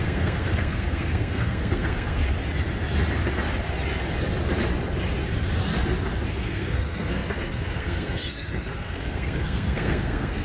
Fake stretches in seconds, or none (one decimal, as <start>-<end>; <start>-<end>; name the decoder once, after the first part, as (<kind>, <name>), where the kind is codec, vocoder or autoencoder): 0.0-2.2 (codec, SNAC); 6.3-10.4